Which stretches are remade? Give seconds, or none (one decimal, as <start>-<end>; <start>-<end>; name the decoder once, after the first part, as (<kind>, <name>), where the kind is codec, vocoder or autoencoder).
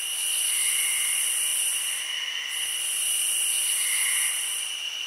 none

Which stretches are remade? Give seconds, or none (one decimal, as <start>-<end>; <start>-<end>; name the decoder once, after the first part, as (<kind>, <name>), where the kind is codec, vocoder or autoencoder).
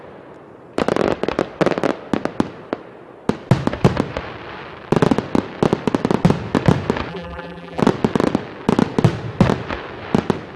7.1-7.8 (vocoder, BigVGAN v2)